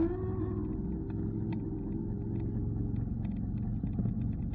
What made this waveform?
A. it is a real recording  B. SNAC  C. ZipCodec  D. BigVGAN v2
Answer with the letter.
A